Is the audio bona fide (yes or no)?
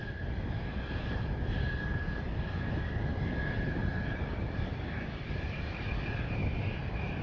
yes